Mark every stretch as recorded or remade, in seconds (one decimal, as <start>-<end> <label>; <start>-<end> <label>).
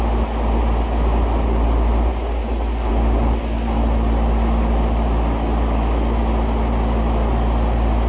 0.0-8.1 recorded